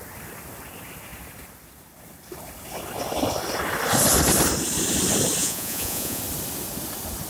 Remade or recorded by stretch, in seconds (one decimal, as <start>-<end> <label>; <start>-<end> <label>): 0.0-5.4 recorded; 5.4-6.2 remade; 6.2-7.3 recorded